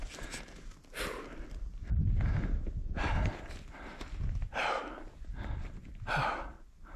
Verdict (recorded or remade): recorded